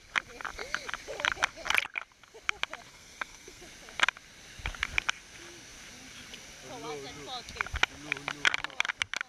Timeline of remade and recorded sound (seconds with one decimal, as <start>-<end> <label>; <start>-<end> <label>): 0.0-2.9 recorded; 2.9-3.6 remade; 3.6-9.3 recorded